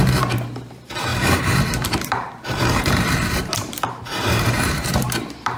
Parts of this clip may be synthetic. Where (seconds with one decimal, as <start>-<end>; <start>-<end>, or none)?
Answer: 0.0-5.6